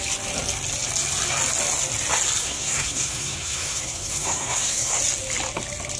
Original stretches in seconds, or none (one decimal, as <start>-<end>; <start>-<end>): 0.0-2.4; 5.0-6.0

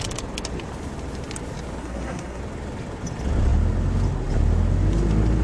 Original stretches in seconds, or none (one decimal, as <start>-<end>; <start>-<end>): 0.0-1.8; 2.4-5.4